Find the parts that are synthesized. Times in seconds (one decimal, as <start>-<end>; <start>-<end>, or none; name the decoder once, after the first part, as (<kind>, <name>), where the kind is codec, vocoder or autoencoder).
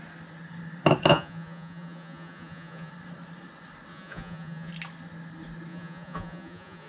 1.1-2.9 (vocoder, Vocos); 3.9-4.7; 5.7-6.9